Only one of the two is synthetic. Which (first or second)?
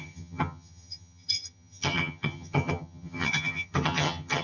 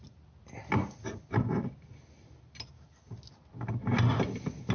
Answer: first